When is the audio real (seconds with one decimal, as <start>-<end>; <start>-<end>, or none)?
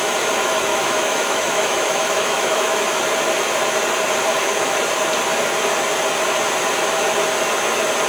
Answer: 0.0-0.7; 3.0-4.3; 4.8-8.1